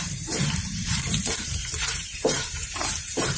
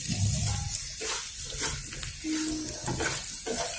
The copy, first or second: first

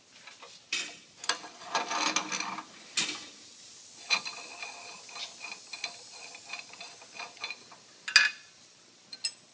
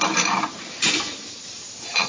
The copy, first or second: second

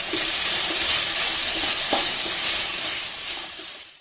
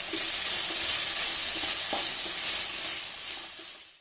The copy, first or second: first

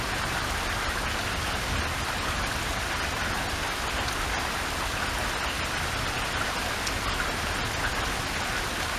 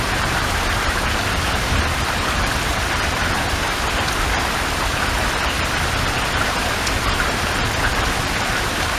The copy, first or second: second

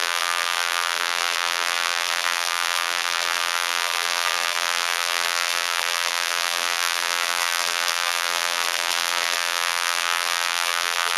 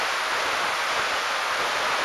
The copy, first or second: first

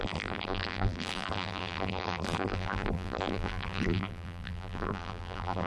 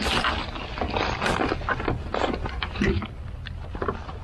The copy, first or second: first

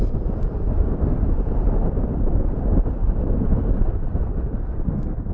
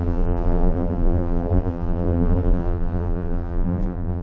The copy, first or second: second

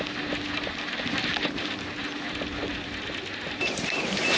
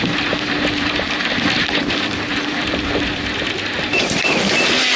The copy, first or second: second